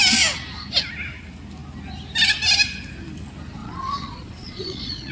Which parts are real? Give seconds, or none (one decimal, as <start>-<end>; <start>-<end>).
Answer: 0.0-3.6